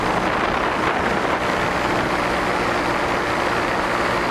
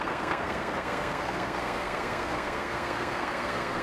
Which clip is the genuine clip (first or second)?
first